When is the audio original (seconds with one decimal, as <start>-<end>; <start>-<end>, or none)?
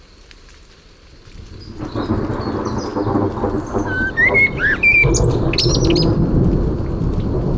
0.0-7.6